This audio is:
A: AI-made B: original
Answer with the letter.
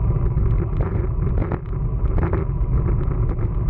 B